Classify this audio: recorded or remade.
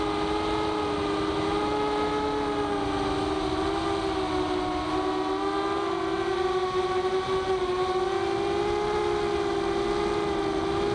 recorded